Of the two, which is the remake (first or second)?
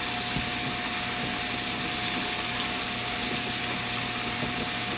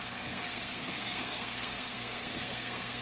second